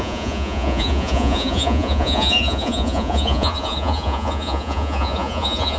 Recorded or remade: remade